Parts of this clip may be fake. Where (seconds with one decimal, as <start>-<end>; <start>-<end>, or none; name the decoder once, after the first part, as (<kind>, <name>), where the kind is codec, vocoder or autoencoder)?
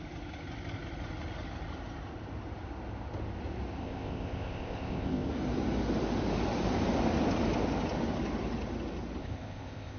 3.8-5.3 (codec, ZipCodec); 9.2-10.0